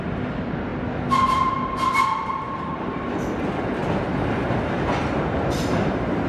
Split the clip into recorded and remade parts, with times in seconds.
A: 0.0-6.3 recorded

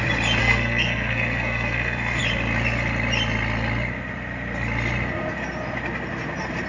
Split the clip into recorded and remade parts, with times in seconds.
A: 0.0-0.4 recorded; 0.4-2.2 remade; 2.2-6.7 recorded

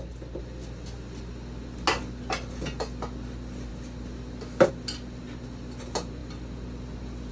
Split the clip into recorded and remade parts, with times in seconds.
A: 0.0-7.3 recorded

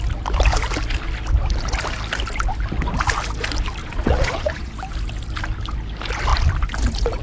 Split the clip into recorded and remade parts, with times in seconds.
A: 0.0-3.8 recorded; 3.8-4.7 remade; 4.7-7.2 recorded

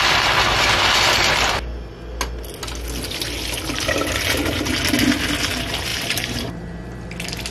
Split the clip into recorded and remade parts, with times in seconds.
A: 0.0-5.9 recorded; 5.9-6.8 remade; 6.8-7.5 recorded

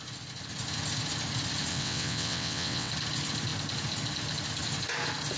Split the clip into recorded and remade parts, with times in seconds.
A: 0.0-1.7 recorded; 1.7-2.9 remade; 2.9-5.4 recorded